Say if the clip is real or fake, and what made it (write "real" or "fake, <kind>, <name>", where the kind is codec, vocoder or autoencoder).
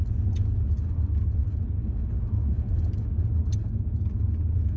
real